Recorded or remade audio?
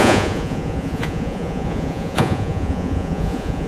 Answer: remade